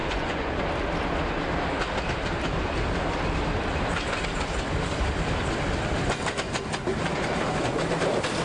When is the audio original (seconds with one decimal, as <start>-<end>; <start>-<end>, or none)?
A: 0.5-8.4